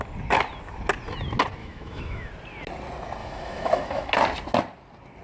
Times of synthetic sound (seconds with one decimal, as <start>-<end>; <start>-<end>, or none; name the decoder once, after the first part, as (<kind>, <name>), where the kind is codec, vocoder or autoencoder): 1.6-2.3 (autoencoder, DAC-VAE); 3.2-4.1